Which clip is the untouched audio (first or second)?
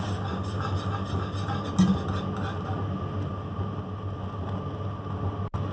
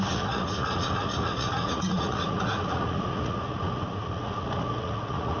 first